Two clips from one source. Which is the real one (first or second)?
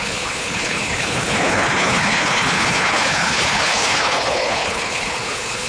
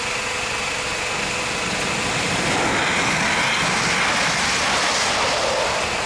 second